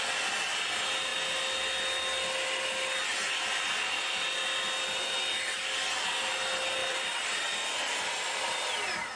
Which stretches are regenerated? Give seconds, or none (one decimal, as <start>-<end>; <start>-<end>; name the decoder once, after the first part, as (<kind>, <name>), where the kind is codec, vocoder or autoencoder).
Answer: 6.8-9.2 (vocoder, BigVGAN v2)